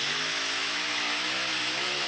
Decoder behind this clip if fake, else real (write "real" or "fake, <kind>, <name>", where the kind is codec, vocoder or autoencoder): fake, autoencoder, DAC-VAE